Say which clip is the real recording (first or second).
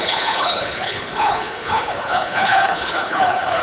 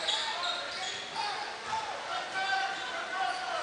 second